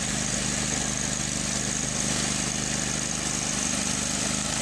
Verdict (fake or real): real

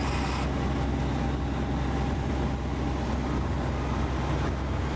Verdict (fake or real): real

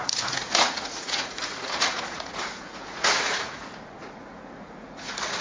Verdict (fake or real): fake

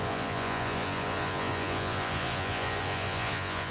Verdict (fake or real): fake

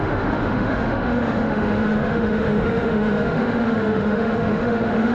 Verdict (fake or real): fake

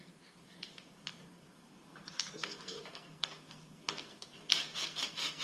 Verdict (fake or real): fake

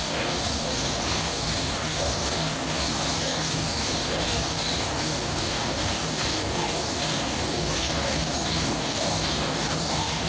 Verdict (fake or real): fake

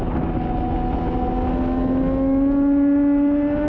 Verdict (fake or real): real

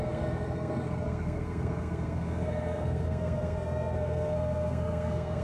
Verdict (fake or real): fake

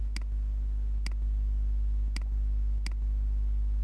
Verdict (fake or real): real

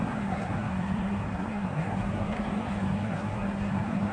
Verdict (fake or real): fake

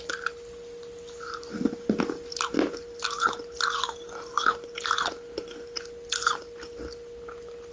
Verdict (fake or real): real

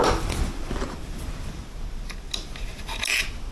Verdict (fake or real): real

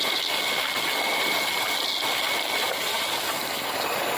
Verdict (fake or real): real